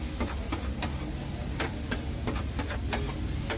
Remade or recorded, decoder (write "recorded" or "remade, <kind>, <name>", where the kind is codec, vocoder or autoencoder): recorded